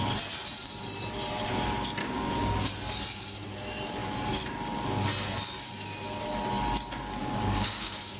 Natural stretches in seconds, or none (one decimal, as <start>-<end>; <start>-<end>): 0.0-2.0; 2.7-7.2